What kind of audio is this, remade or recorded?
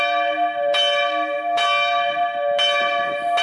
recorded